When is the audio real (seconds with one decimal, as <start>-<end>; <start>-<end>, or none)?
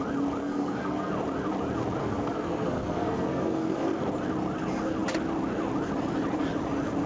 0.0-0.4; 1.1-2.0; 4.0-7.1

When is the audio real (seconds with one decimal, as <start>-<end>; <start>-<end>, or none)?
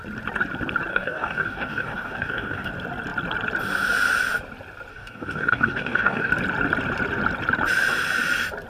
0.0-0.9; 2.7-4.9; 6.3-8.7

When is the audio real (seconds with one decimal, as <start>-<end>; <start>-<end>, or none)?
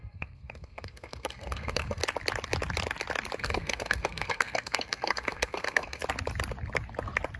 2.0-3.4; 6.0-7.4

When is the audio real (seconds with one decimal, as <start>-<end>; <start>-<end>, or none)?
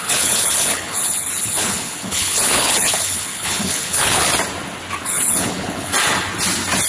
4.3-5.0; 5.9-6.9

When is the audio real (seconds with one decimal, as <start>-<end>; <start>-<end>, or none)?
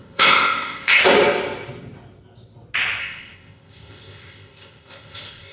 1.0-3.0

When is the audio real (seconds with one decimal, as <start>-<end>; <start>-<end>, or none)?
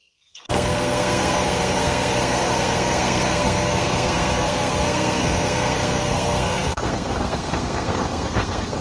none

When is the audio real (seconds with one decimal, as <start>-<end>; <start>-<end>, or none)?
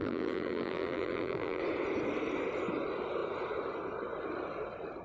1.6-5.0